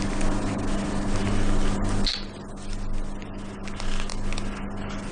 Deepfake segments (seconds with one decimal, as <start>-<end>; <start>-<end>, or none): none